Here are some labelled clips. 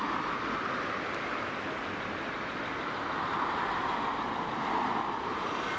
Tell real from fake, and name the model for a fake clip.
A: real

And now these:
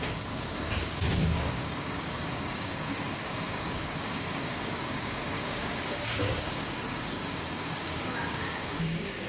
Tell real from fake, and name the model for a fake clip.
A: fake, codec, DAC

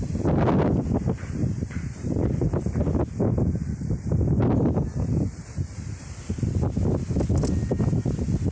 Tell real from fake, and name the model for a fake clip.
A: real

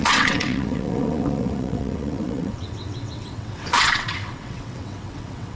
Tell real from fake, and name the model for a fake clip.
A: fake, vocoder, WaveNeXt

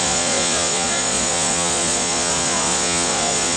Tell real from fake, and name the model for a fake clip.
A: fake, vocoder, Vocos